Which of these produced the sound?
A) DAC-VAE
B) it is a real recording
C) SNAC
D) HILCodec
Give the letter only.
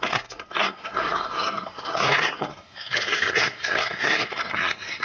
C